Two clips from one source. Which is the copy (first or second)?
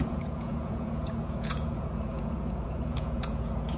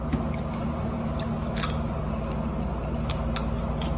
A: first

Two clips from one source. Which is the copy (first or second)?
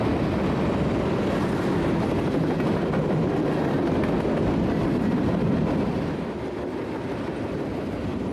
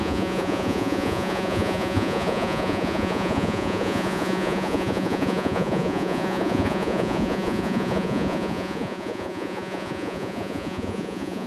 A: second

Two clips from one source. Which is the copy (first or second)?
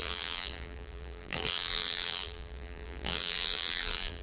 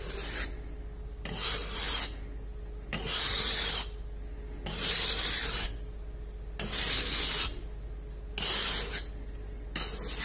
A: first